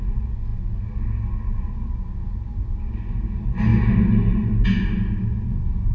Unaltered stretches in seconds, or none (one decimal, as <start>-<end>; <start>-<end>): 0.0-5.9